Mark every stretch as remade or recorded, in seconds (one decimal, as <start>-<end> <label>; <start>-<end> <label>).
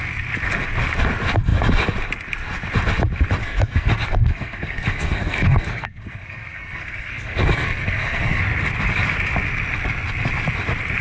0.0-3.4 recorded; 3.4-8.4 remade; 8.4-11.0 recorded